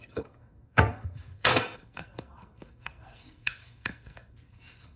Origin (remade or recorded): remade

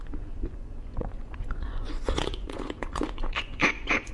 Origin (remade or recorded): remade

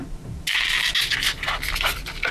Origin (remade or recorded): recorded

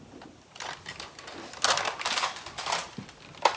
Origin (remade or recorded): recorded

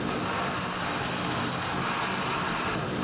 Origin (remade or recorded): recorded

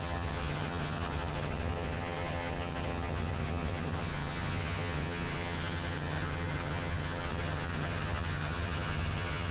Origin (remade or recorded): remade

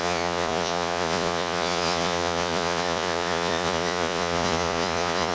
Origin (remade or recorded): remade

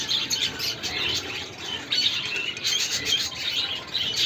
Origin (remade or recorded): recorded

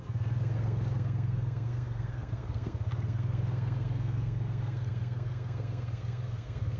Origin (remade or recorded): remade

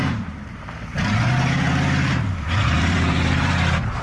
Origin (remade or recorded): remade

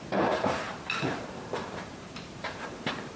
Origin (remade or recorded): remade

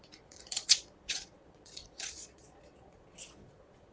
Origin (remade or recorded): remade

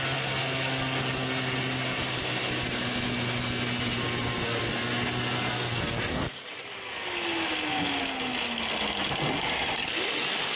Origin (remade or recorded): recorded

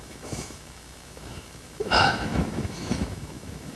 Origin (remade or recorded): remade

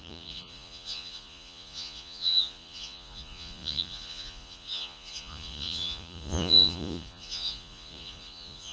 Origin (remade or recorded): remade